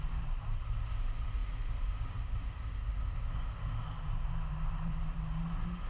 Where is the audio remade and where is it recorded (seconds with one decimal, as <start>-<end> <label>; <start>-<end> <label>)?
0.0-5.9 recorded